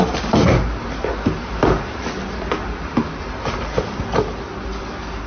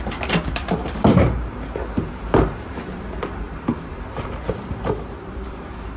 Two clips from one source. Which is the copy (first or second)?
second